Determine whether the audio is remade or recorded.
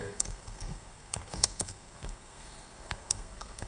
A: remade